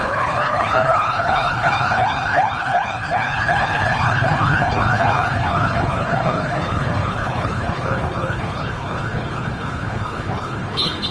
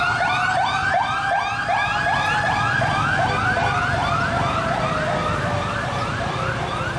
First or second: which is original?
second